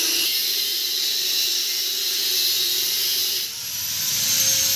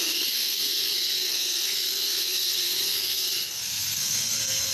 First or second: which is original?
first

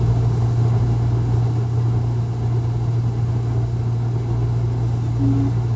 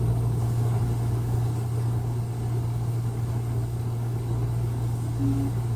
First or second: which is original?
first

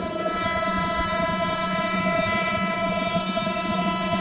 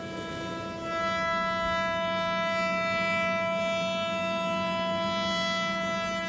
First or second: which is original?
second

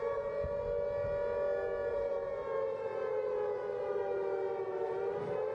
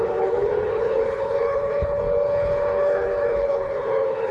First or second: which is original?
first